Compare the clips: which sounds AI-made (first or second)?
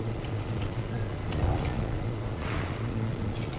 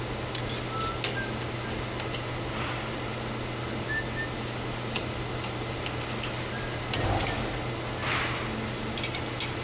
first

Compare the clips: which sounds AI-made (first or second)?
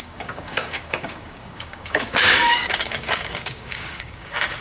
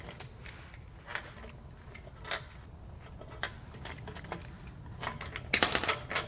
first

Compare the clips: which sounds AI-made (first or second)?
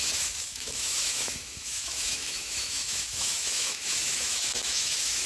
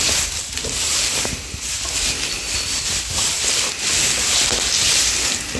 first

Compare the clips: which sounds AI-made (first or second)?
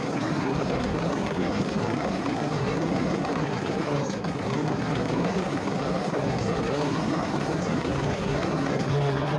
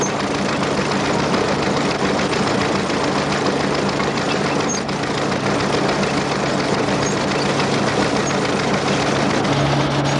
first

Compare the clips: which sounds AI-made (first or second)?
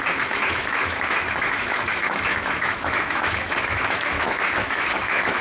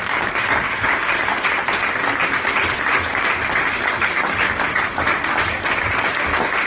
first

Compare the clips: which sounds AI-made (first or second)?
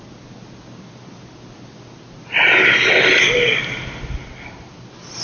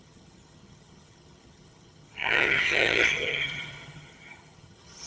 second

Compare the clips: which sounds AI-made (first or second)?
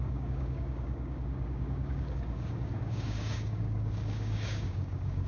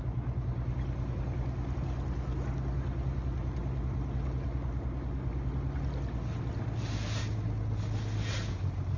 first